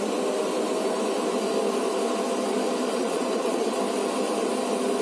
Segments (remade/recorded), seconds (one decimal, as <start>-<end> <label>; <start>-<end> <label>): 0.0-2.9 recorded; 2.9-3.8 remade; 3.8-5.0 recorded